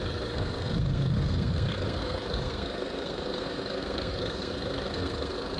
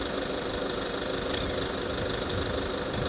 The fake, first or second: first